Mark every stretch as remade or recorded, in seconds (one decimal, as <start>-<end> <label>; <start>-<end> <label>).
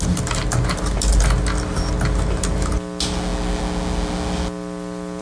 0.0-5.2 recorded